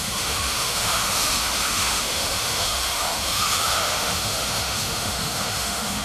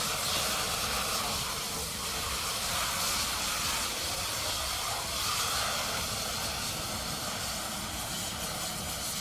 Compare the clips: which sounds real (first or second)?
second